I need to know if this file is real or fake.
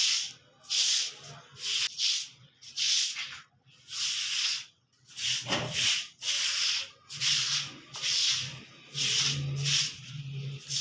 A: real